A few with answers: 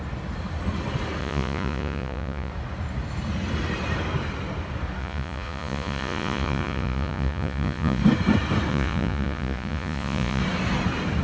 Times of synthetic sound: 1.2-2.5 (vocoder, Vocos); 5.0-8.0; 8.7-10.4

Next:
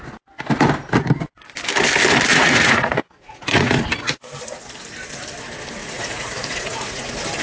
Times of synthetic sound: 2.3-3.7 (vocoder, Vocos); 5.8-7.0

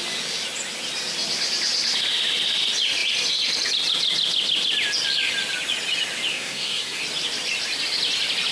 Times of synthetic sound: 6.3-7.0 (codec, SNAC)

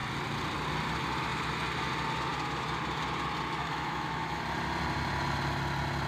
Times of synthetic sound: 3.6-4.4 (autoencoder, DAC-VAE)

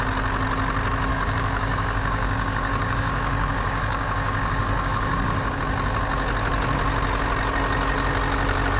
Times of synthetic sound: 1.1-5.6 (codec, DAC)

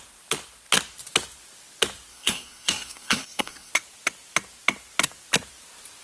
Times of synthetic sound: 2.1-3.7 (codec, SNAC)